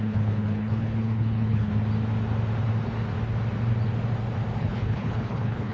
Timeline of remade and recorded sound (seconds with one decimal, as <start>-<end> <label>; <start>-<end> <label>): 0.0-1.7 remade; 1.7-4.6 recorded; 4.6-5.7 remade